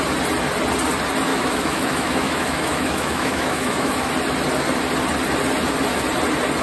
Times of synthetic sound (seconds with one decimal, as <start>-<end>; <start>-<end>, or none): 1.3-4.1